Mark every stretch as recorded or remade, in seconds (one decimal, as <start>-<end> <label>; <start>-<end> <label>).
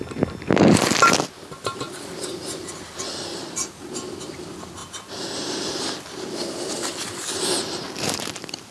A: 0.0-8.7 recorded